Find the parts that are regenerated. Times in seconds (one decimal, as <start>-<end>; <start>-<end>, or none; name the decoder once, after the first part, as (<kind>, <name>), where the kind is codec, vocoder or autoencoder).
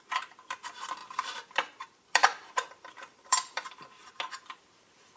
1.0-4.1 (vocoder, BigVGAN v2)